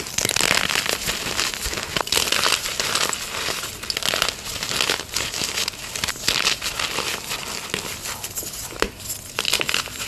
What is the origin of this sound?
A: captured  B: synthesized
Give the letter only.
A